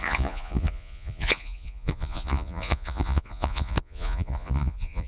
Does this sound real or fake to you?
fake